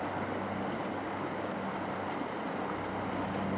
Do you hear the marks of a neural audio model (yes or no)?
no